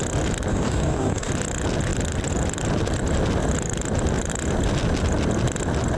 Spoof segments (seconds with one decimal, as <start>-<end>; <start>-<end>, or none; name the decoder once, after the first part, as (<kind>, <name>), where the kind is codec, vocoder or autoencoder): 0.5-1.3 (codec, DAC)